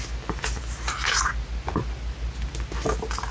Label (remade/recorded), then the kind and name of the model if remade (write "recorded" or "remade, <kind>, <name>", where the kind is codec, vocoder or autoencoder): recorded